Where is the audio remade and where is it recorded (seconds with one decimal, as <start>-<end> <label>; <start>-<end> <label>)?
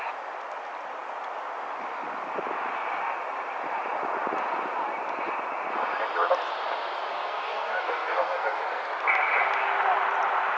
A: 0.0-7.1 recorded; 7.1-8.9 remade; 8.9-10.6 recorded